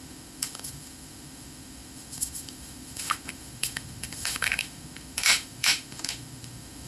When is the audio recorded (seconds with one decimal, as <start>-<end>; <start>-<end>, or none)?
none